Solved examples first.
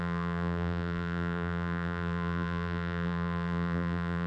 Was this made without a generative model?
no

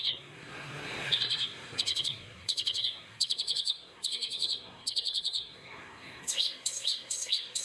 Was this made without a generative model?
no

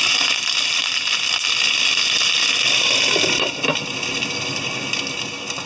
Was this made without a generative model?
yes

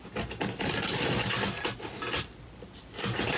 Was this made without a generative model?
yes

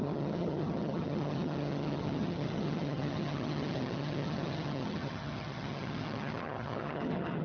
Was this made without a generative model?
no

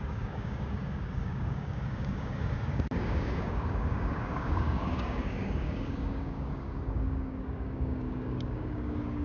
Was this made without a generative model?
no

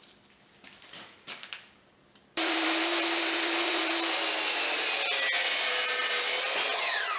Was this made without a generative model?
no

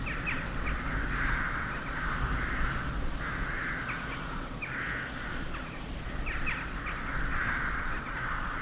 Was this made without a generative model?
yes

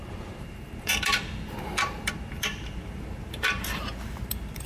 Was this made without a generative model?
no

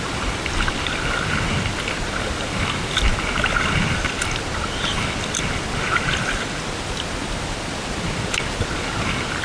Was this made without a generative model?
yes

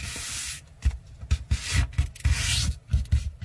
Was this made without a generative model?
yes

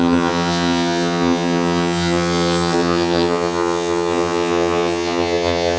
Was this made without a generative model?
no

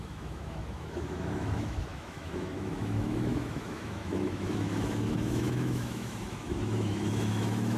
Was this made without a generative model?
no